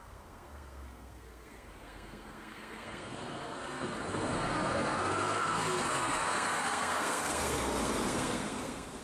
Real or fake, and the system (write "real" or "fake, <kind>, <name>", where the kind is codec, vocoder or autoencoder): fake, codec, SNAC